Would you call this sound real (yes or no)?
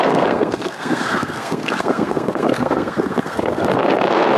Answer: no